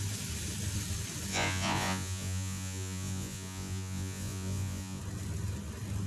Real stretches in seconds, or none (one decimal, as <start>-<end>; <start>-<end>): 0.0-1.3; 5.0-6.1